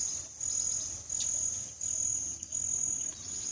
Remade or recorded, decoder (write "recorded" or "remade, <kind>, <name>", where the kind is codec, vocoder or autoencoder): recorded